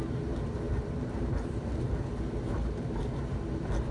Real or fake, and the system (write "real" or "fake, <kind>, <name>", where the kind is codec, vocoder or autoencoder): fake, vocoder, BigVGAN v2